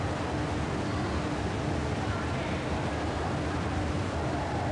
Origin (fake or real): real